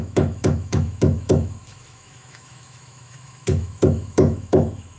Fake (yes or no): yes